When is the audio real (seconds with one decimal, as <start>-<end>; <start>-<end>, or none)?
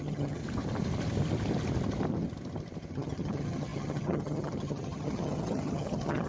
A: 0.4-2.9